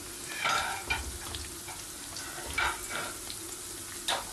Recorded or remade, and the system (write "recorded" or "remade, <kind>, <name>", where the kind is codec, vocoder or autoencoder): recorded